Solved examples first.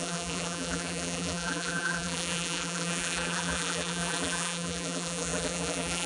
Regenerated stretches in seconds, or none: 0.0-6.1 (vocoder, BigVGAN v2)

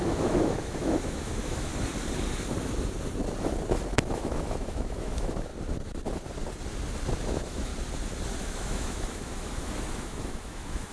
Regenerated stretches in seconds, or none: 0.0-1.7 (autoencoder, DAC-VAE); 3.9-5.5; 7.3-7.7; 8.4-10.9